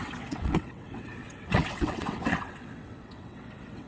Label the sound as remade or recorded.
remade